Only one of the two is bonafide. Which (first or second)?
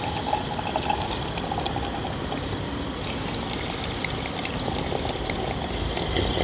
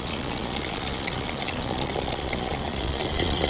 first